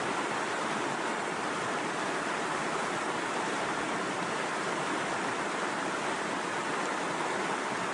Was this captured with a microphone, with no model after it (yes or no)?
no